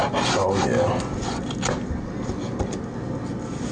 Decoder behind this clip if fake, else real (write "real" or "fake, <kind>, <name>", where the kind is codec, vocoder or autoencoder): real